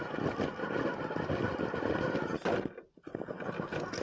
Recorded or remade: recorded